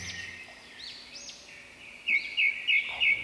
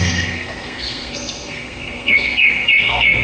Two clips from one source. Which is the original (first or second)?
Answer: first